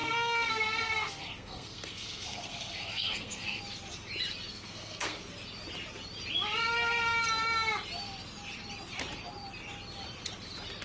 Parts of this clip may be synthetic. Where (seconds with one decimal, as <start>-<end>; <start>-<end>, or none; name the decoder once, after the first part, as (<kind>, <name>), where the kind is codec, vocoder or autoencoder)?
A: 0.0-3.6 (codec, SNAC); 4.5-5.2